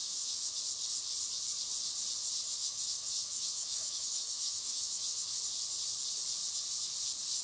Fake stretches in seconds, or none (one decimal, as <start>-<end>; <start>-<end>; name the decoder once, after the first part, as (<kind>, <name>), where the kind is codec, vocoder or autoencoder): 0.0-0.6 (autoencoder, DAC-VAE); 2.6-5.4